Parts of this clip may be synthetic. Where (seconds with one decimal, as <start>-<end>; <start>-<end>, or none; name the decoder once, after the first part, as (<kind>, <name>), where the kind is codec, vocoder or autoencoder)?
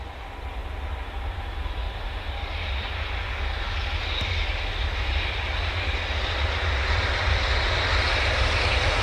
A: none